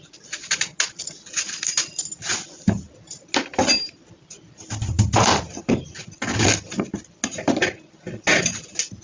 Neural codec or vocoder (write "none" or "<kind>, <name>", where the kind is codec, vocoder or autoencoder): none